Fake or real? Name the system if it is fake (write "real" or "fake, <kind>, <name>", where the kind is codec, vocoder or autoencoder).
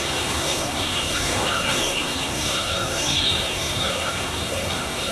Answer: fake, codec, SNAC